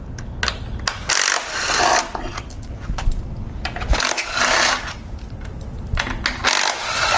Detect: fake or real real